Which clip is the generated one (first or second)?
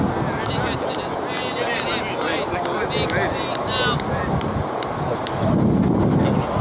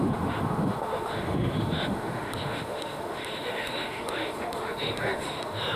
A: second